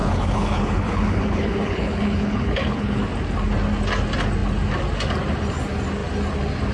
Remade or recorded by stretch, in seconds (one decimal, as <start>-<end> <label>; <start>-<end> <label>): 0.0-3.0 remade; 3.0-6.7 recorded